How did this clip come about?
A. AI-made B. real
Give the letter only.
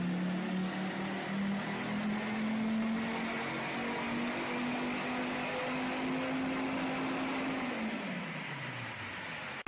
B